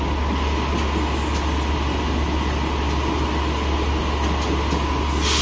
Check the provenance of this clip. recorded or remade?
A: recorded